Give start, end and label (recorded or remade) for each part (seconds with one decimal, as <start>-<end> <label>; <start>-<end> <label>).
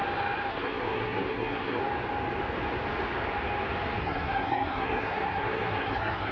0.0-0.5 recorded; 0.5-1.8 remade; 1.8-4.0 recorded; 4.0-6.3 remade